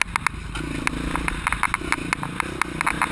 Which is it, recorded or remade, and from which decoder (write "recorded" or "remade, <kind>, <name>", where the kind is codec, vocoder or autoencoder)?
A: recorded